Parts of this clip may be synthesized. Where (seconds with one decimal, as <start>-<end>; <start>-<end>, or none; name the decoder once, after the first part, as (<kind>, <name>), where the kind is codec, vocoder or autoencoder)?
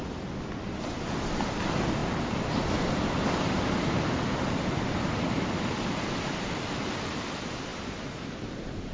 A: none